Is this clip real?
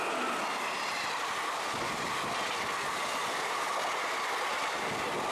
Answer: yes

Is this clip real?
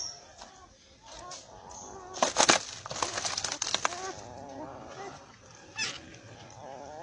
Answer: yes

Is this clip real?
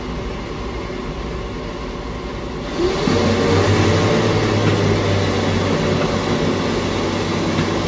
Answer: yes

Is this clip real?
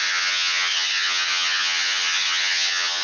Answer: no